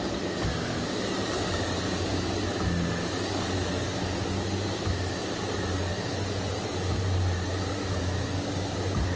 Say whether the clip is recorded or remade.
recorded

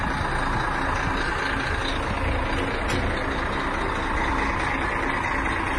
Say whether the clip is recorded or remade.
recorded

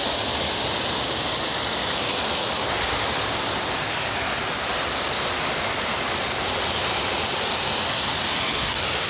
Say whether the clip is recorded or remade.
recorded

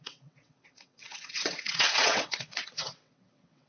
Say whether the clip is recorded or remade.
remade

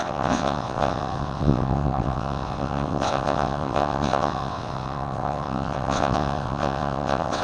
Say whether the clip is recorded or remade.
remade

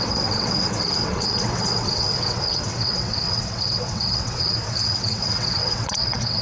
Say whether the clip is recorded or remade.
remade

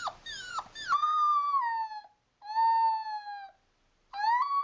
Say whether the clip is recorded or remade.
recorded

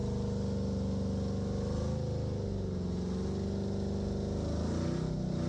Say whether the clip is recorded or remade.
recorded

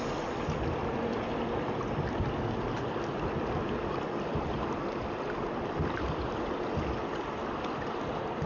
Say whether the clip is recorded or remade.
recorded